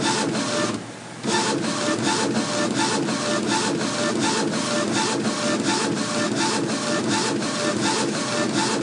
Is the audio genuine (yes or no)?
yes